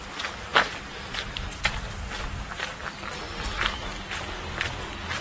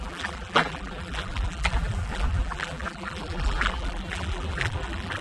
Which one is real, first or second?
first